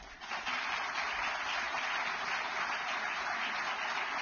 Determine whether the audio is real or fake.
real